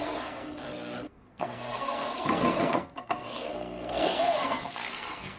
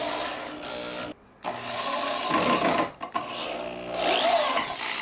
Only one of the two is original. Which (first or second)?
second